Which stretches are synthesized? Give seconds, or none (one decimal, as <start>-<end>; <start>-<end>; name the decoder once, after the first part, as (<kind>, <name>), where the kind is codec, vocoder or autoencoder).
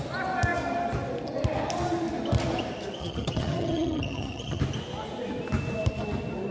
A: 3.0-4.6 (vocoder, HiFi-GAN)